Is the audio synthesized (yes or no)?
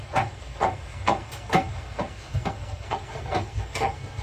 yes